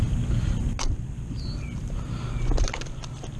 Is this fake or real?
real